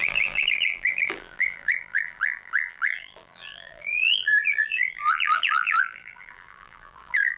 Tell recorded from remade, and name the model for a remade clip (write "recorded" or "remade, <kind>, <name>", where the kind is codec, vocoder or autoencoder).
remade, vocoder, BigVGAN v2